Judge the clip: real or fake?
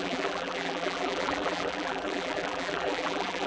fake